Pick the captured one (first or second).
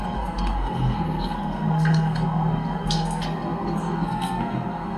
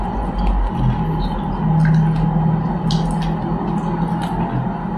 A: second